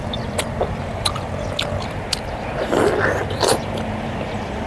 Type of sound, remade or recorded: recorded